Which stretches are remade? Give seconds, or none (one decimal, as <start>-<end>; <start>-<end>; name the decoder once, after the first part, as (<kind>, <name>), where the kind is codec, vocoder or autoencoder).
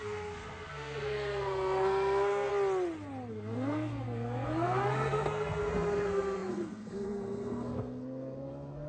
0.0-2.5 (codec, SNAC); 3.3-8.9